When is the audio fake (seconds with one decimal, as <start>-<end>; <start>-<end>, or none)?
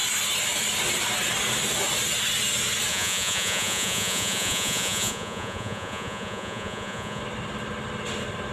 2.9-7.2